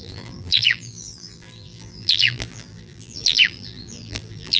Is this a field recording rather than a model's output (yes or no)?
no